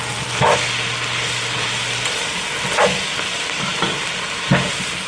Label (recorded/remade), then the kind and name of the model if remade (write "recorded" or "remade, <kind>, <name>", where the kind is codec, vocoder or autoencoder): recorded